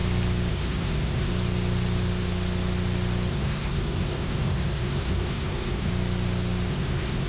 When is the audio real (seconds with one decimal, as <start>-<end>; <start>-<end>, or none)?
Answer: 0.0-0.5; 1.3-3.3; 5.9-6.7

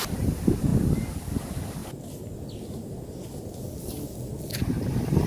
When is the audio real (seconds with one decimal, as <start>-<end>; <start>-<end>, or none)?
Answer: 0.0-5.3

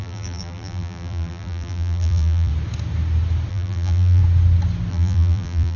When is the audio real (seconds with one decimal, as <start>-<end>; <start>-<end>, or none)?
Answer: 2.5-3.5; 4.2-4.9

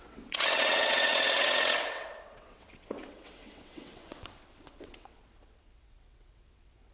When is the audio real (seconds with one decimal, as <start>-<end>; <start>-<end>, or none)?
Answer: none